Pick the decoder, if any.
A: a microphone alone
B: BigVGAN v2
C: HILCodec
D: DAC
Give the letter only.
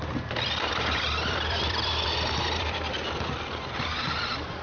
B